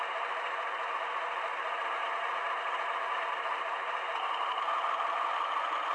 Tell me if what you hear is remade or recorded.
remade